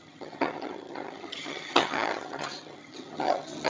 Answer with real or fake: fake